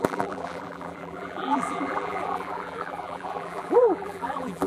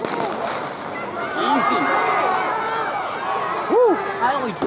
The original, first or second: second